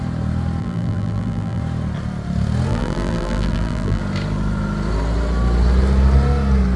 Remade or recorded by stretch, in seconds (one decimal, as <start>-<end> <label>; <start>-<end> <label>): 0.0-0.6 recorded; 0.6-1.6 remade; 1.6-2.7 recorded; 2.7-4.0 remade; 4.0-6.8 recorded